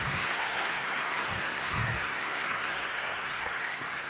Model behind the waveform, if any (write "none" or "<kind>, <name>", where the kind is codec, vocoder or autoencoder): codec, SNAC